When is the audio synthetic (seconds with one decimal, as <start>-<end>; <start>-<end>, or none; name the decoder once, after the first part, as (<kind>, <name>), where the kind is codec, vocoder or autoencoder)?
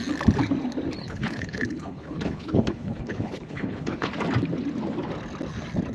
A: 1.0-4.1 (codec, HILCodec)